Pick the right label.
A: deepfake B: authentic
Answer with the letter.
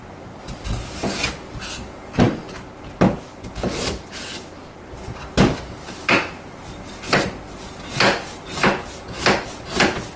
B